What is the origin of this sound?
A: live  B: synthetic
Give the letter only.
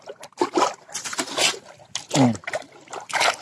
A